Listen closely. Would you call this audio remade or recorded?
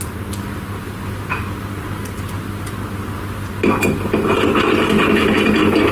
recorded